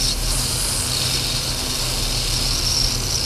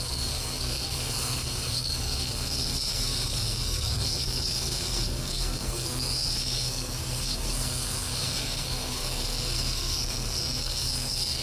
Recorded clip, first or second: first